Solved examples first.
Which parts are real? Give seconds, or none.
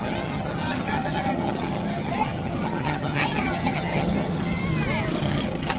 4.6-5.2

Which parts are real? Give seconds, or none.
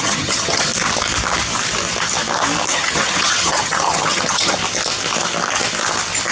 0.7-2.7; 4.6-6.3